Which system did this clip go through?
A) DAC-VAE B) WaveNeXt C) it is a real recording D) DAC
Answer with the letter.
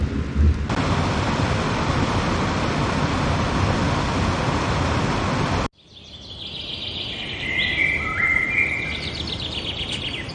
C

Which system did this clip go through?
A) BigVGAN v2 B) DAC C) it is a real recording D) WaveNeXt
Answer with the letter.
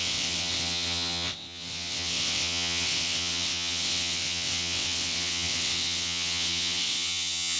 D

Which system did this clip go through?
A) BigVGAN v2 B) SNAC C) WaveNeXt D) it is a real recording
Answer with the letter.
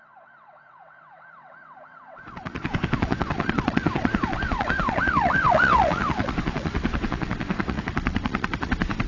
C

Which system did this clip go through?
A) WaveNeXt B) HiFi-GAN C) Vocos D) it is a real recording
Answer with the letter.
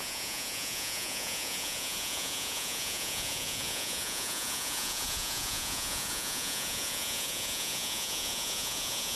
C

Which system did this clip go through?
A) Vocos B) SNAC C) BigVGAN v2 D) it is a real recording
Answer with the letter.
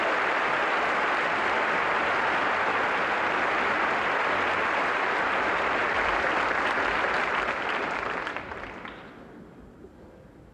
D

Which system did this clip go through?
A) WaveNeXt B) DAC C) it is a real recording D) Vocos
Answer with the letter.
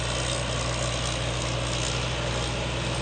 C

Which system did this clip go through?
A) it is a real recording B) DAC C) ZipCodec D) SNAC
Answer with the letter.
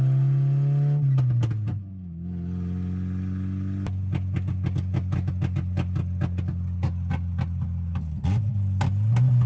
A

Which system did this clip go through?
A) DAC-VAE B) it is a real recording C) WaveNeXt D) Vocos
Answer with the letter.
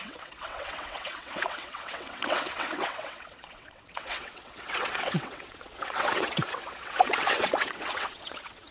C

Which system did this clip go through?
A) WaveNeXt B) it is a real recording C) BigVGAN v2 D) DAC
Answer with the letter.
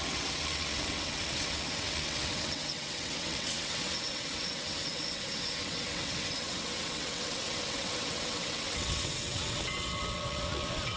A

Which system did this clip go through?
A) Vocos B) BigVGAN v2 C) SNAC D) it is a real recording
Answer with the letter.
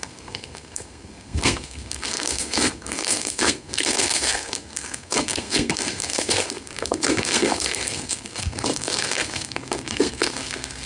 C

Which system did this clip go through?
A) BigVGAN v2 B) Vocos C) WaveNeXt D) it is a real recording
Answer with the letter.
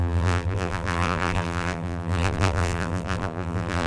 A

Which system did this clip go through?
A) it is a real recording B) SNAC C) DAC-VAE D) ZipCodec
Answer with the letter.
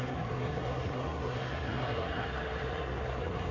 B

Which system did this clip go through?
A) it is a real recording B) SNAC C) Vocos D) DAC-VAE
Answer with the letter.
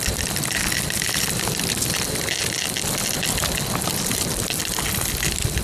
A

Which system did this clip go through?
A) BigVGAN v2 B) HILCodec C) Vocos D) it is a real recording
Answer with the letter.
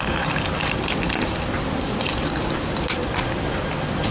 D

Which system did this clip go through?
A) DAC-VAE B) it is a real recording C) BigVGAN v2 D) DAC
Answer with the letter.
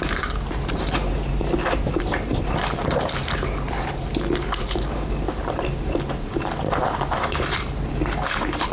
C